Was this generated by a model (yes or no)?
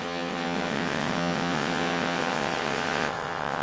yes